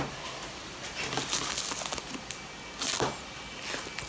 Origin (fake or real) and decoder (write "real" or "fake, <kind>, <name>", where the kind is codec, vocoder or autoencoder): real